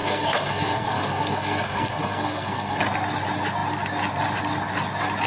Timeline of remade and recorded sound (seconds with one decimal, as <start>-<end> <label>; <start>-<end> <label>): 0.0-2.8 remade; 2.8-5.3 recorded